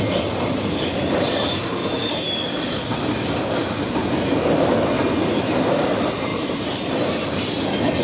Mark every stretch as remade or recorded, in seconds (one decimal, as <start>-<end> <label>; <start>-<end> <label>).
0.0-1.8 remade; 1.8-2.7 recorded; 2.7-4.7 remade; 4.7-5.4 recorded; 5.4-8.0 remade

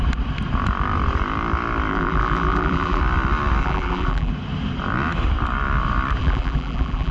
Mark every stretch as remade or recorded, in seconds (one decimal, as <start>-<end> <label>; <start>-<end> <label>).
0.0-1.9 recorded; 1.9-3.0 remade; 3.0-3.6 recorded; 3.6-4.3 remade; 4.3-6.2 recorded; 6.2-7.1 remade

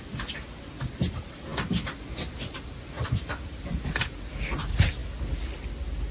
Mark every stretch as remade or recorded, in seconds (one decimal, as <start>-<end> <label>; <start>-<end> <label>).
0.0-6.1 recorded

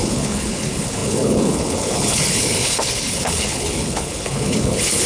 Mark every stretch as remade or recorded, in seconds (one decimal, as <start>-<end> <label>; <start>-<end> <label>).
0.0-5.1 remade

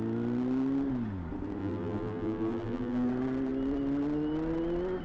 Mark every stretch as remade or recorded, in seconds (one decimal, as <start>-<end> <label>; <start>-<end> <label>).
0.0-1.6 recorded; 1.6-3.1 remade; 3.1-5.0 recorded

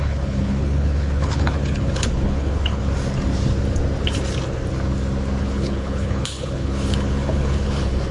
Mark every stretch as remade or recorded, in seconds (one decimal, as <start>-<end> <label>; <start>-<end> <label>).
0.0-2.8 remade; 2.8-5.4 recorded; 5.4-8.1 remade

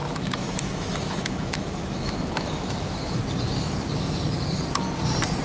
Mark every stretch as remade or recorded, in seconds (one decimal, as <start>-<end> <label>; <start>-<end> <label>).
0.0-3.2 remade; 3.2-5.4 recorded

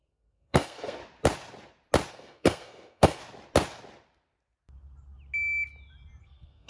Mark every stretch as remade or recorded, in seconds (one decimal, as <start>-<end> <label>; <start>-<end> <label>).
0.0-1.0 remade; 1.0-2.1 recorded; 2.1-3.2 remade; 3.2-6.2 recorded; 6.2-6.7 remade